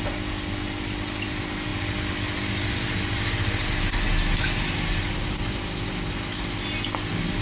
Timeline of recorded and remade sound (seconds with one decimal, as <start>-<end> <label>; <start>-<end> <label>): 0.0-7.4 recorded